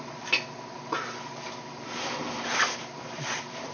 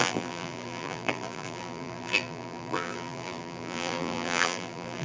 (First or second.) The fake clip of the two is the second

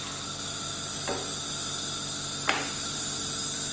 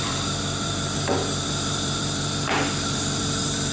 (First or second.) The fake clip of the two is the second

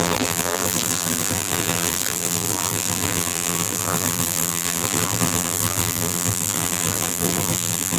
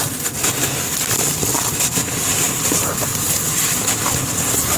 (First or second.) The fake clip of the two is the first